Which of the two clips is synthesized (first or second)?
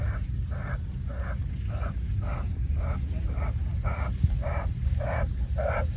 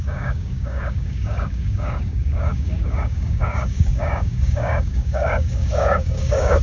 second